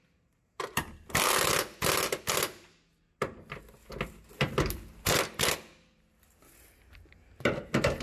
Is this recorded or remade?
recorded